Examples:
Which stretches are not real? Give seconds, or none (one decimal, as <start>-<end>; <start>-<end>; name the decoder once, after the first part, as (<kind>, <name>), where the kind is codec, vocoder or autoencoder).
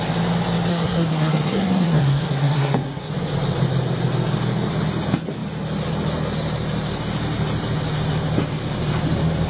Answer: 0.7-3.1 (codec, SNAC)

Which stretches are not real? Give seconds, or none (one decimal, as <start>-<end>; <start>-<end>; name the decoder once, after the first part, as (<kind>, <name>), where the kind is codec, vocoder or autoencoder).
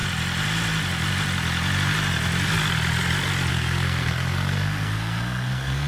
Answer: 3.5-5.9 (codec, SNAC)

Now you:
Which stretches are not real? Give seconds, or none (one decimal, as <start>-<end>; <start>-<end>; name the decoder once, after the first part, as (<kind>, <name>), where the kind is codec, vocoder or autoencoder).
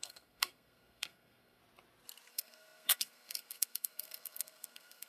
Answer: 0.0-1.6 (codec, SNAC); 2.3-5.1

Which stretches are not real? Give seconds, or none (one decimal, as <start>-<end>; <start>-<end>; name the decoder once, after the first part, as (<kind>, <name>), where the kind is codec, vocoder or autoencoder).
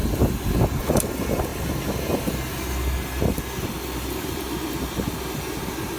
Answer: none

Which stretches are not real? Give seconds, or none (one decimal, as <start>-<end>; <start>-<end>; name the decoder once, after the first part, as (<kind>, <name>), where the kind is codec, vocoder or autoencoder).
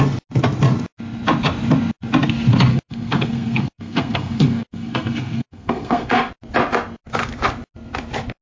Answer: 2.7-6.3 (codec, SNAC)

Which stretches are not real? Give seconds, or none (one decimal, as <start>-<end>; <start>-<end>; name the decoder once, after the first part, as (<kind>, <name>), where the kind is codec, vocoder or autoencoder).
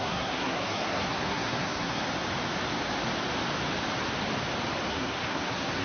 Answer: 0.0-2.0 (codec, SNAC); 4.9-5.8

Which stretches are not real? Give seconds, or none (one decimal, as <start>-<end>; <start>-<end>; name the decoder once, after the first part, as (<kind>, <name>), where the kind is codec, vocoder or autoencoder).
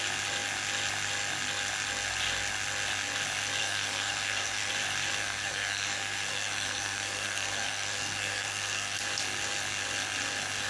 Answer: 3.6-4.7 (codec, SNAC); 5.2-9.0